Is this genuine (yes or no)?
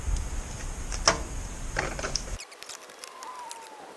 yes